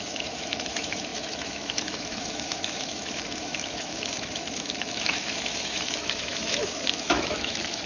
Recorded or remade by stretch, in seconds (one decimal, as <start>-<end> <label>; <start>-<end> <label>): 0.0-7.9 remade